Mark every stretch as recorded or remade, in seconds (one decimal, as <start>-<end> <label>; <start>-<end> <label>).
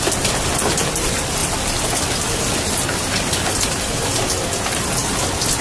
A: 0.0-5.6 recorded